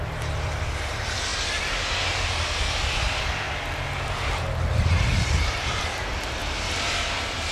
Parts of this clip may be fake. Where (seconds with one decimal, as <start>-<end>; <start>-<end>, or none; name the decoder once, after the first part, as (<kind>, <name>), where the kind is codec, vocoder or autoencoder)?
none